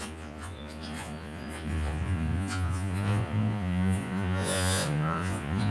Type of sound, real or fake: fake